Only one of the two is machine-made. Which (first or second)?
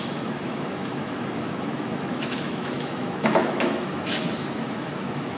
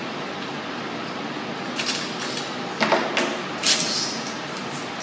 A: first